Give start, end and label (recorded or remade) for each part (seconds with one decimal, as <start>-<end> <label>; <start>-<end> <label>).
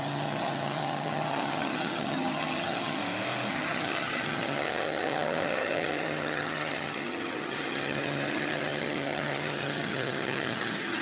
0.0-3.0 remade; 3.0-3.5 recorded; 3.5-11.0 remade